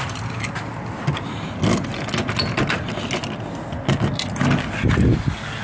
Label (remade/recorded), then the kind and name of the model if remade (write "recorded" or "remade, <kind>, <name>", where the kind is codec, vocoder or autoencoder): recorded